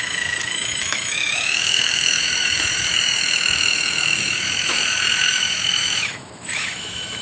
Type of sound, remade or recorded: remade